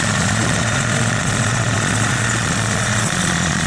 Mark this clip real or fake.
fake